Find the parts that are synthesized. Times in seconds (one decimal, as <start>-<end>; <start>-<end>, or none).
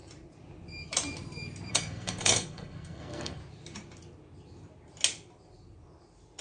1.7-3.4